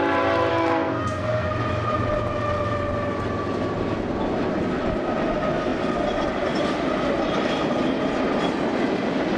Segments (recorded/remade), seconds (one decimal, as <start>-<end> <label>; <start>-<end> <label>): 0.0-0.5 recorded; 0.5-1.5 remade; 1.5-9.4 recorded